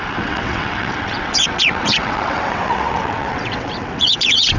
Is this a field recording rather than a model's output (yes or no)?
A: no